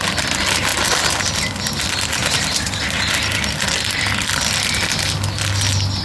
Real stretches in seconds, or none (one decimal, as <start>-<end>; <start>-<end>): 0.0-6.0